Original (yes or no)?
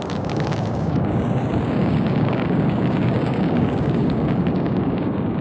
no